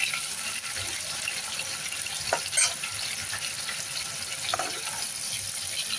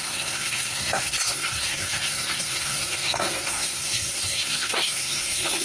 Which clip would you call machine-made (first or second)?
second